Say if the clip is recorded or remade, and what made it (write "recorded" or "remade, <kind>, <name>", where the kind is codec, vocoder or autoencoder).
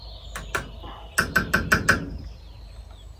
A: recorded